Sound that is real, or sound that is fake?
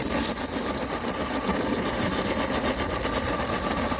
real